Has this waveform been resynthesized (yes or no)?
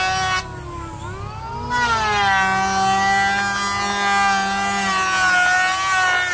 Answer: no